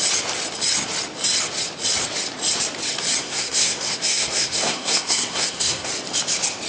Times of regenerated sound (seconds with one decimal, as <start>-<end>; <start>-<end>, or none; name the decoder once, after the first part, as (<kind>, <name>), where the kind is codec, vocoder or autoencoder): 3.2-5.9 (codec, SNAC)

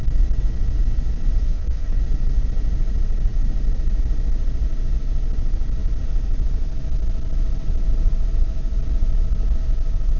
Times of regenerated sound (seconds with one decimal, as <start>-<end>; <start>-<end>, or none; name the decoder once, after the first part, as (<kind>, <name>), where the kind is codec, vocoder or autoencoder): 1.4-2.0 (codec, SNAC)

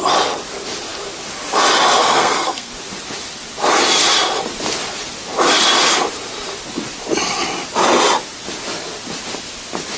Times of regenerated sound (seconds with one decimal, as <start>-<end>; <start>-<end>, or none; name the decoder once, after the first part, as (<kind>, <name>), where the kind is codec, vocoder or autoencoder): 2.0-2.7 (codec, SNAC)

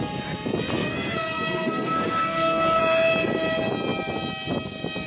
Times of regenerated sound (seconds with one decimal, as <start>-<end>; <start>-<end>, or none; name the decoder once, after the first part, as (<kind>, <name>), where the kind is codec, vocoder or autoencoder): 0.8-2.8 (codec, SNAC)

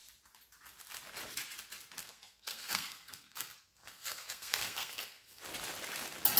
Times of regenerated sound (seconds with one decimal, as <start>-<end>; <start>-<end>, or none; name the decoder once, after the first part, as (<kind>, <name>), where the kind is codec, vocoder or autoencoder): 2.0-5.4 (codec, SNAC)

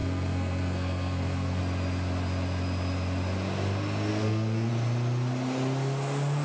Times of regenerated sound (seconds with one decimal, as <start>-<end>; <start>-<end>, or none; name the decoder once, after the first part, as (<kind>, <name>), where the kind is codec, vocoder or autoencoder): 0.0-1.6 (codec, SNAC); 4.1-4.7

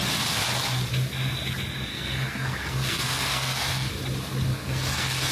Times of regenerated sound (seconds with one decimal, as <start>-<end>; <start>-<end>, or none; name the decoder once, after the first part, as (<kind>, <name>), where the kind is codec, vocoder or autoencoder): 1.9-3.9 (codec, SNAC); 4.5-5.3